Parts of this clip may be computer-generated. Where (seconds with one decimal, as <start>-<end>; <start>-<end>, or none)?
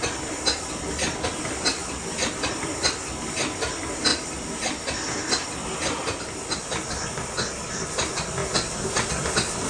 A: none